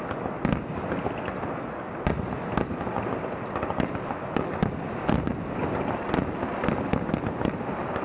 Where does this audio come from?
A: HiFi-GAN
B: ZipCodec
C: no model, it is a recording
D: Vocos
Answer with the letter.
C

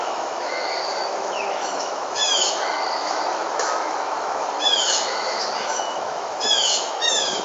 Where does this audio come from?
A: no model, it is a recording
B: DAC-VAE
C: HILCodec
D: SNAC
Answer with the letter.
B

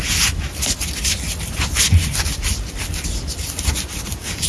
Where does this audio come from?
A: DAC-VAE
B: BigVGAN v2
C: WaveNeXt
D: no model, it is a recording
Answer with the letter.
D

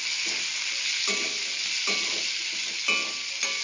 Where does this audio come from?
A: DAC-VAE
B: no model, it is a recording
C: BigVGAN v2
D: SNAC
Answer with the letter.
B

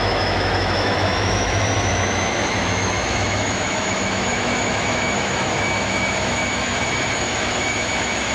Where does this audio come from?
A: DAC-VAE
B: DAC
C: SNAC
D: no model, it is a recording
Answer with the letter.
A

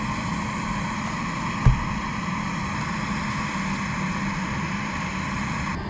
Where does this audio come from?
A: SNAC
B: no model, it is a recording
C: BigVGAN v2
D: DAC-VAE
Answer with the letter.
B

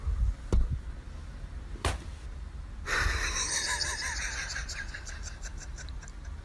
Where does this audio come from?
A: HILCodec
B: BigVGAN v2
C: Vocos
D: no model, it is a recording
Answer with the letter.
D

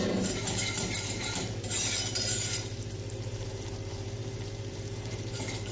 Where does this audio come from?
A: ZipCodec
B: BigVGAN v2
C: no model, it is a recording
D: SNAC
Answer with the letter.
B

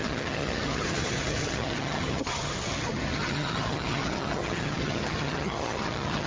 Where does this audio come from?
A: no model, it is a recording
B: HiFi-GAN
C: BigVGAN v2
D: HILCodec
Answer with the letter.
B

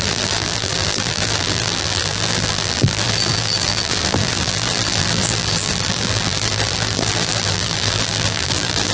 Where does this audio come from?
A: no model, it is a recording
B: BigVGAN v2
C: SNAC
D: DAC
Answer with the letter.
B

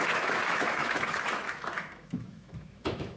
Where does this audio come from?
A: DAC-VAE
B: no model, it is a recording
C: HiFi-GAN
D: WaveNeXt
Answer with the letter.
A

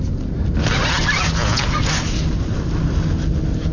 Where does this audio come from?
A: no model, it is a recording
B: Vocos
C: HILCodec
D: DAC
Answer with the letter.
A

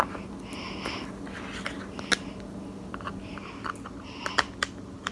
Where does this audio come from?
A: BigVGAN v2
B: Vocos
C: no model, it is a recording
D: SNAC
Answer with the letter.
C